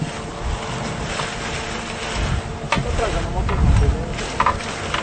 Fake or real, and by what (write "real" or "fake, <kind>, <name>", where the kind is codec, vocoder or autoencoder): real